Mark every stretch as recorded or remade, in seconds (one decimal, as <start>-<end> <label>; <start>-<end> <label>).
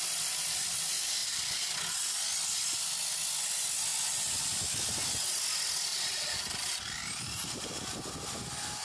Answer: 0.0-1.2 recorded; 1.2-1.8 remade; 1.8-5.9 recorded; 5.9-8.1 remade; 8.1-8.8 recorded